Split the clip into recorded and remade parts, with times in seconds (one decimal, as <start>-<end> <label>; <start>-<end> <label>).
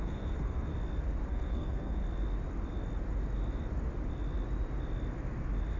0.0-0.7 remade; 0.7-1.3 recorded; 1.3-2.0 remade; 2.0-5.8 recorded